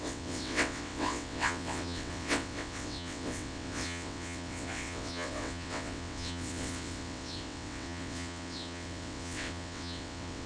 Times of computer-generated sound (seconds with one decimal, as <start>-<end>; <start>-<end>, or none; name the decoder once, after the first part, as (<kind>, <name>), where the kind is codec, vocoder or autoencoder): 0.0-10.5 (vocoder, WaveNeXt)